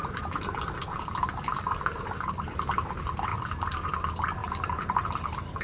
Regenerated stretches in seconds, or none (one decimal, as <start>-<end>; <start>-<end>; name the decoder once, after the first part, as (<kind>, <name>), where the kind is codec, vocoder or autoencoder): 1.5-2.7 (vocoder, BigVGAN v2); 3.3-3.9; 4.4-5.6